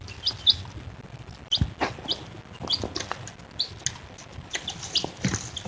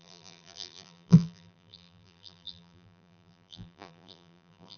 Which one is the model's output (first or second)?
second